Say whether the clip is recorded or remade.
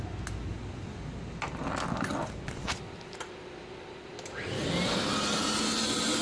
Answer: recorded